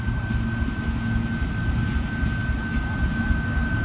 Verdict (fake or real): real